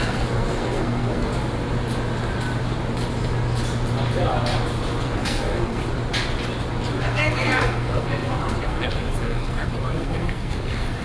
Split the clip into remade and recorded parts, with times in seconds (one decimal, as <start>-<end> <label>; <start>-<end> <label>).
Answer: 0.0-1.3 remade; 1.3-5.0 recorded; 5.0-5.8 remade; 5.8-7.0 recorded; 7.0-11.0 remade